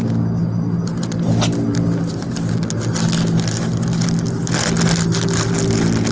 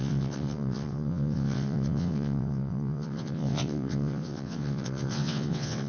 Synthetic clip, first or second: second